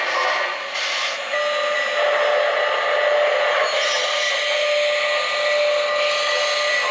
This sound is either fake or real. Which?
real